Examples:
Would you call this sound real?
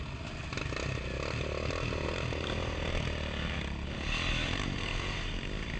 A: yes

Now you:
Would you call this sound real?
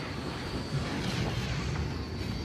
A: yes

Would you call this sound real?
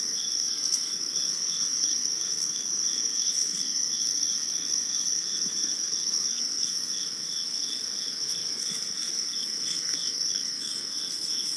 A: no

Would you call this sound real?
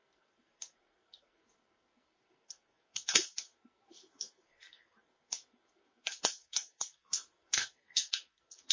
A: no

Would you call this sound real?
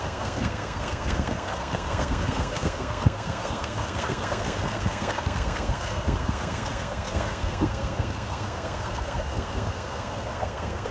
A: no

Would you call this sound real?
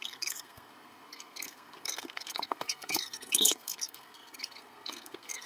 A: no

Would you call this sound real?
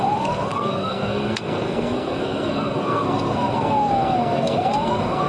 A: no